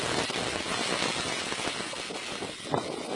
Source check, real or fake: real